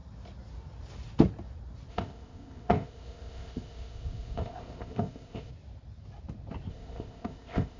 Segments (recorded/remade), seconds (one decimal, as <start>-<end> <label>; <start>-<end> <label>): 0.0-1.9 recorded; 1.9-5.5 remade; 5.5-6.7 recorded; 6.7-7.8 remade